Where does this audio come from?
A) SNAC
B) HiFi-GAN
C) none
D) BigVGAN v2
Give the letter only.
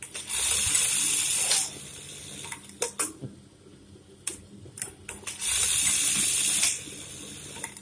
C